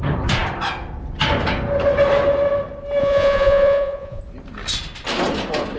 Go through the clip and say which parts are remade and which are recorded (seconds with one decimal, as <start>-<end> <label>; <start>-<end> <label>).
0.0-3.0 recorded; 3.0-4.2 remade; 4.2-5.8 recorded